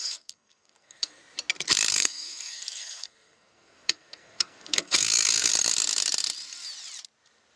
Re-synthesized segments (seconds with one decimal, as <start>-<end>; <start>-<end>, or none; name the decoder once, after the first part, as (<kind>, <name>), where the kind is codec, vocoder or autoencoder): 0.0-1.2 (codec, SNAC); 1.9-5.5